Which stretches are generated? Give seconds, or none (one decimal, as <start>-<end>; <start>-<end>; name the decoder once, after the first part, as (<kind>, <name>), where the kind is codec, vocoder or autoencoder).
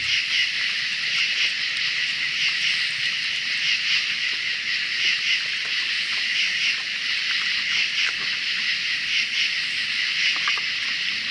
0.4-1.0 (vocoder, BigVGAN v2); 6.6-8.0